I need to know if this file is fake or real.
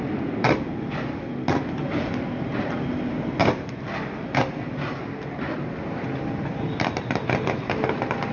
real